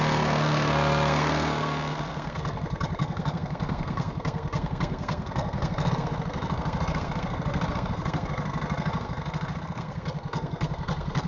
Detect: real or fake fake